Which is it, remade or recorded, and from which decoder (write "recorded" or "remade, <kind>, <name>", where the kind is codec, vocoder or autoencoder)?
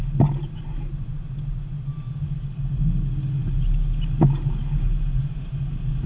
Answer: recorded